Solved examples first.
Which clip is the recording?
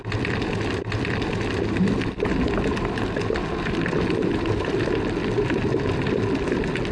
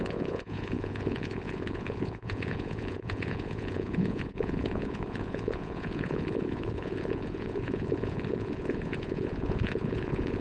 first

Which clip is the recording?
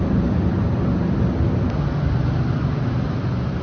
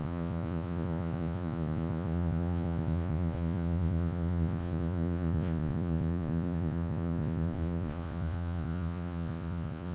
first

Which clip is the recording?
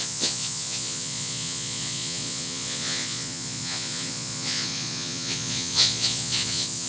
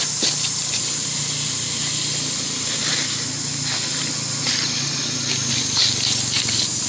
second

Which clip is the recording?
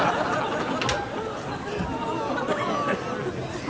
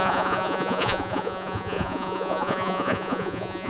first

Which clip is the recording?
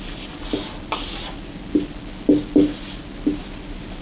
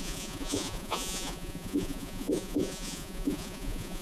first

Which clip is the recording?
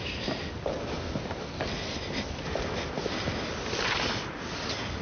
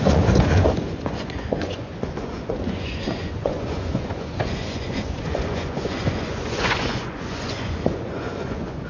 first